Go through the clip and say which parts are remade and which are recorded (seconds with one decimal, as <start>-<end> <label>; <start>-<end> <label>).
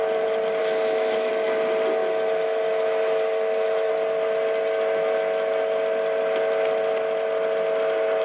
0.0-0.6 recorded; 0.6-1.3 remade; 1.3-2.0 recorded; 2.0-3.9 remade; 3.9-8.2 recorded